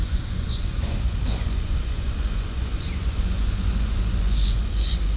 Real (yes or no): no